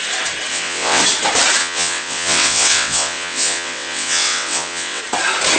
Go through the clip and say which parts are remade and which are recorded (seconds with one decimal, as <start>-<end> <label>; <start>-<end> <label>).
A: 0.0-0.5 recorded; 0.5-1.0 remade; 1.0-1.6 recorded; 1.6-5.0 remade; 5.0-5.6 recorded